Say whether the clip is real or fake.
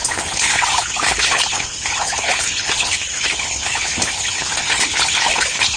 fake